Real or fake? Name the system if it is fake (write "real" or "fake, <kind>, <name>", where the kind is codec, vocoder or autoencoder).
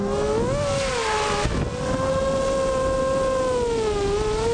real